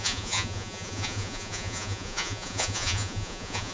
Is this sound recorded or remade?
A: remade